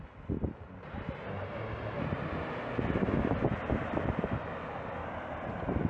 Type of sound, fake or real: real